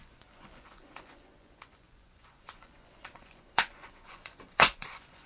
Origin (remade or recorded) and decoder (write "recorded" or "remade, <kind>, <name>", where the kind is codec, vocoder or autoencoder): remade, vocoder, Vocos